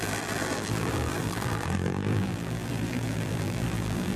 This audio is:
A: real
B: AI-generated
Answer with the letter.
B